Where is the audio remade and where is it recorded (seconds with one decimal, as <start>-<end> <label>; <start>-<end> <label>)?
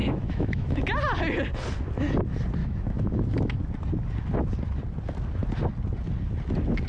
0.0-0.8 remade; 0.8-2.6 recorded; 2.6-3.6 remade; 3.6-6.9 recorded